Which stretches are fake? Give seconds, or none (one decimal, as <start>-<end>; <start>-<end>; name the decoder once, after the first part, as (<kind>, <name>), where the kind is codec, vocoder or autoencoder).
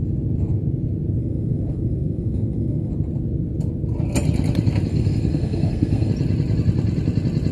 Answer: 1.2-2.9 (codec, SNAC); 4.9-6.1